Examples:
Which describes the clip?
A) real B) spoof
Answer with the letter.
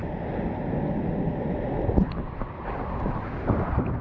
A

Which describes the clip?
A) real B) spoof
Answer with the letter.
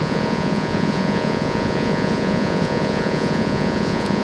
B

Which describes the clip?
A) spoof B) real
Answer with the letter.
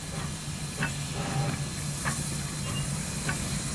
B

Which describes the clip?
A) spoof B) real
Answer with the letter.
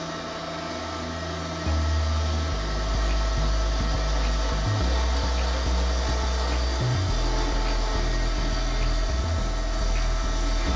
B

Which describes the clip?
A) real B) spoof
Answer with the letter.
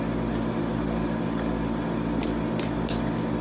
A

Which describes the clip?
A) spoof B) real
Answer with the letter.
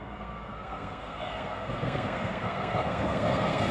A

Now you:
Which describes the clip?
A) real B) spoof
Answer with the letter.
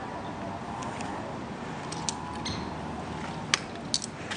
A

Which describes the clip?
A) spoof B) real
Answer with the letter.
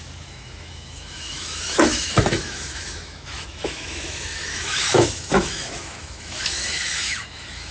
A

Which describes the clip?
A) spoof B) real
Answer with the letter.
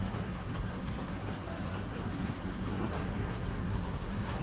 A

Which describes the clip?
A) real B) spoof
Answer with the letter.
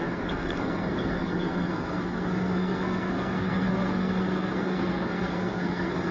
B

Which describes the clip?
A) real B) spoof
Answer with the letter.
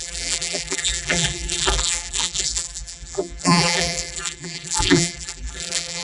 B